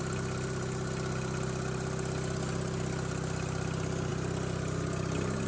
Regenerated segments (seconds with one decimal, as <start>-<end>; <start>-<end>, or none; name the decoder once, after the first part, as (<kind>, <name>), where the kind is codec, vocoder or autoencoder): none